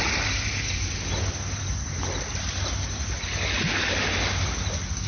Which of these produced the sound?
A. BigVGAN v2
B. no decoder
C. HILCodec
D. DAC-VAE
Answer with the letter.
B